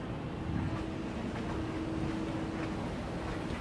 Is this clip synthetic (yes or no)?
no